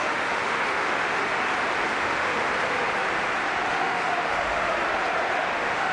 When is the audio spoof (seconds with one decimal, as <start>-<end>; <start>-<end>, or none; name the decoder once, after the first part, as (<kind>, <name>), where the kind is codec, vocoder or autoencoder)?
0.0-1.3 (autoencoder, DAC-VAE); 1.9-2.4; 3.7-4.8; 5.4-5.9